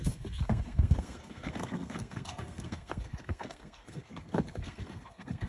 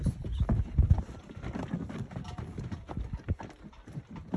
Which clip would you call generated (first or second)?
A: first